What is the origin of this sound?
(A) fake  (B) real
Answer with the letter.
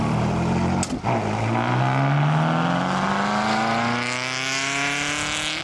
B